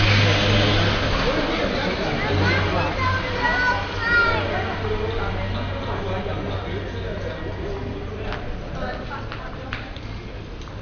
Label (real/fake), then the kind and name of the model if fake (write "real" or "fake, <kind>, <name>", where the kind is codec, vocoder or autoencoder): real